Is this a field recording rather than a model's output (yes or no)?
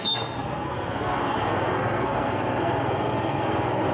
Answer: no